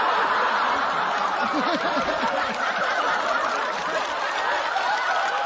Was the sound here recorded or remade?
recorded